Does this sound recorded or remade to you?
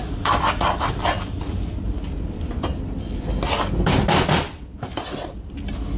recorded